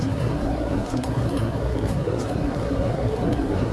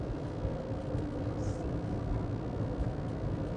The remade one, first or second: first